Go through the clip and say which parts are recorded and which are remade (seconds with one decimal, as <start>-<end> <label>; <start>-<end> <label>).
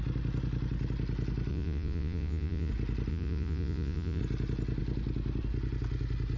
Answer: 0.0-1.5 recorded; 1.5-2.7 remade; 2.7-3.1 recorded; 3.1-4.2 remade; 4.2-6.4 recorded